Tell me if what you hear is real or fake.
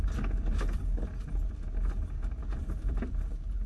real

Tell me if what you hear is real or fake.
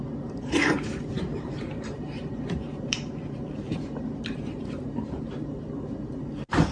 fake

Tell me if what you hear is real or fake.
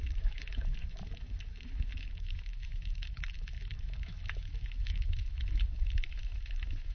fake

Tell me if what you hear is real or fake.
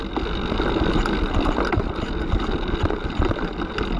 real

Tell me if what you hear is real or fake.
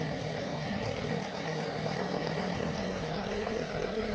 fake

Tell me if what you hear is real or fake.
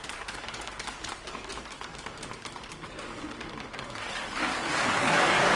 fake